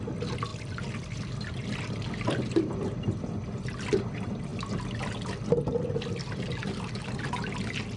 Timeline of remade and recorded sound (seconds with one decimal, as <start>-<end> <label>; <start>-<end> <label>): 0.0-8.0 recorded